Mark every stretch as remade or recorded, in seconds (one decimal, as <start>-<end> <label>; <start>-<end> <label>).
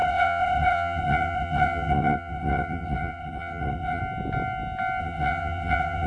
0.0-4.0 remade; 4.0-5.0 recorded; 5.0-6.1 remade